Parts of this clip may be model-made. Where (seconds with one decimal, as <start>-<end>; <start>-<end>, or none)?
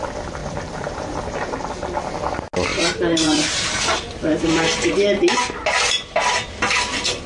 0.4-1.2; 2.7-3.7